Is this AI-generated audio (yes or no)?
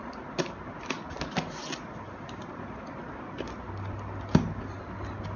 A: no